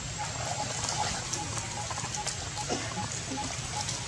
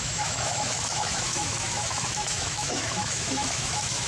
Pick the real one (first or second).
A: first